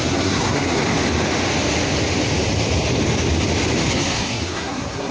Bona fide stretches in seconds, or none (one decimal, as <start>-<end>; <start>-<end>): 0.8-3.9